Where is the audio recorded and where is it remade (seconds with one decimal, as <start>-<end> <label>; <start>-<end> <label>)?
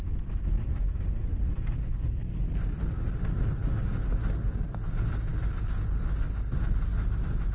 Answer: 0.0-7.5 recorded